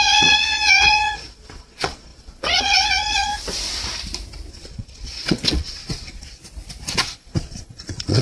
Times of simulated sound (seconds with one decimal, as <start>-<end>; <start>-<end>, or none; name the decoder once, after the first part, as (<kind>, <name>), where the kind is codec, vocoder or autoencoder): 0.0-3.3 (vocoder, Vocos); 4.5-6.4; 6.9-8.2